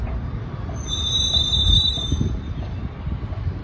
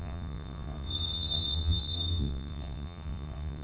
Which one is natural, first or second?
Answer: first